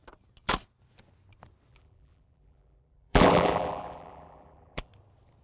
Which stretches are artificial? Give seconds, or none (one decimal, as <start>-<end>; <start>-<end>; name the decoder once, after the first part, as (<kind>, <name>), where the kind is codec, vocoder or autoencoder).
1.7-4.9 (vocoder, BigVGAN v2)